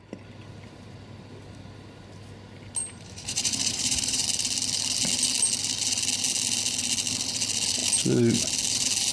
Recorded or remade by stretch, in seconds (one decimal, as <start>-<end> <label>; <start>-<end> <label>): 0.0-2.8 recorded; 2.8-4.2 remade; 4.2-9.1 recorded